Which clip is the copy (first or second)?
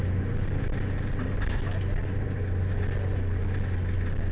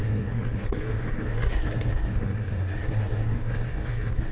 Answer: second